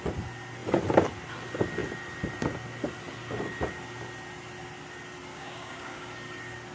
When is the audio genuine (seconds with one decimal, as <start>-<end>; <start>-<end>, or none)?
0.0-5.3; 6.1-6.7